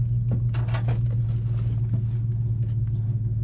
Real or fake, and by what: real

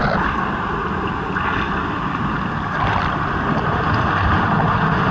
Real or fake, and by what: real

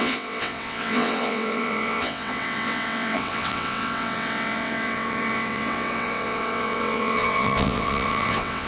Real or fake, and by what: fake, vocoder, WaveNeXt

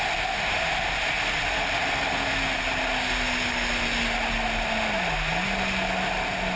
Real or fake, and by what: real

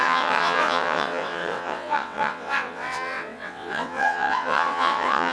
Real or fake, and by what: fake, vocoder, WaveNeXt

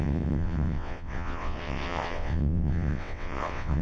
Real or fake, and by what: fake, vocoder, WaveNeXt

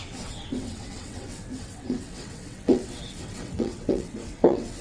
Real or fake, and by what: fake, vocoder, WaveNeXt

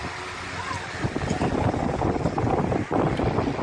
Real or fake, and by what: real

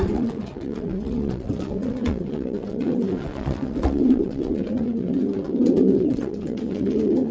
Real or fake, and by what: fake, vocoder, WaveNeXt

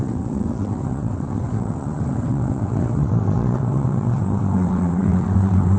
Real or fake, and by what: fake, vocoder, WaveNeXt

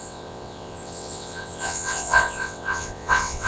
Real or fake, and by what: fake, vocoder, WaveNeXt